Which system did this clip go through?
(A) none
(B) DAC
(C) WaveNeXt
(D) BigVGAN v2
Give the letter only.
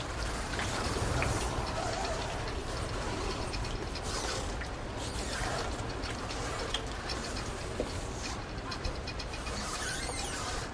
D